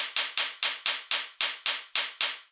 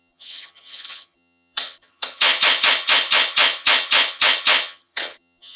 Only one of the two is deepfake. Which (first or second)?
second